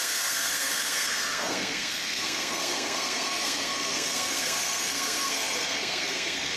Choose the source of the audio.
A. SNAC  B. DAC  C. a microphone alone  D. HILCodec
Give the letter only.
A